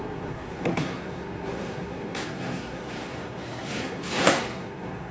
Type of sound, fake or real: fake